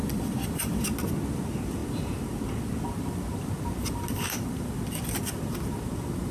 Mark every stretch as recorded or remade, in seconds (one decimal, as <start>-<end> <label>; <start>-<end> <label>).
0.0-0.8 remade; 0.8-6.3 recorded

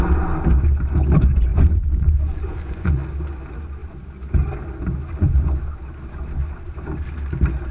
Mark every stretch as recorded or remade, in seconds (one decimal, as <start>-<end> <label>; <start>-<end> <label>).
0.0-1.5 recorded; 1.5-3.1 remade; 3.1-7.7 recorded

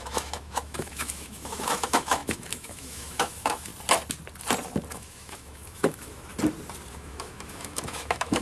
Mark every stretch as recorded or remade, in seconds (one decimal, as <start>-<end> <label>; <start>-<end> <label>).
0.0-3.7 remade; 3.7-4.9 recorded; 4.9-6.3 remade; 6.3-6.9 recorded; 6.9-8.4 remade